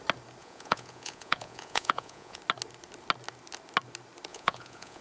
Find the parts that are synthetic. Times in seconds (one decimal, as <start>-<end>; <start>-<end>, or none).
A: 0.4-2.4; 4.3-5.0